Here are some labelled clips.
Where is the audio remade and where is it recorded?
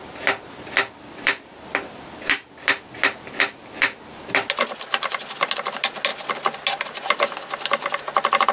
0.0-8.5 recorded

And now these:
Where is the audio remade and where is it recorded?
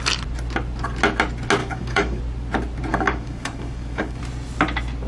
0.0-1.6 recorded; 1.6-2.2 remade; 2.2-2.9 recorded; 2.9-4.2 remade; 4.2-5.1 recorded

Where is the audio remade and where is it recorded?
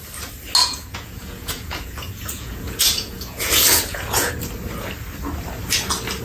0.0-0.6 recorded; 0.6-4.3 remade; 4.3-6.2 recorded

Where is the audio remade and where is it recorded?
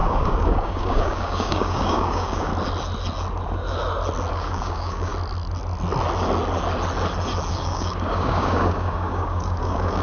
0.0-2.5 remade; 2.5-4.3 recorded; 4.3-5.1 remade; 5.1-7.5 recorded; 7.5-10.0 remade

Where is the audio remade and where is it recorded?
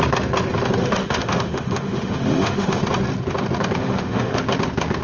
0.0-0.8 recorded; 0.8-2.8 remade; 2.8-3.8 recorded; 3.8-4.4 remade; 4.4-5.0 recorded